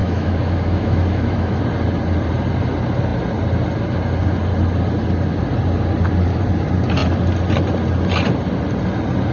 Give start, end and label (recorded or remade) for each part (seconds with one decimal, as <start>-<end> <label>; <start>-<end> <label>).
0.0-1.6 remade; 1.6-9.3 recorded